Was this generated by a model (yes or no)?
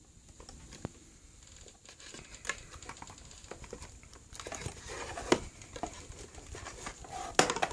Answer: no